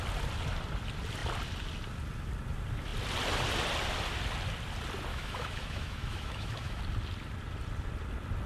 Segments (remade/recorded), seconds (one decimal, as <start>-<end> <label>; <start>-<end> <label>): 0.0-5.1 recorded; 5.1-6.8 remade; 6.8-8.5 recorded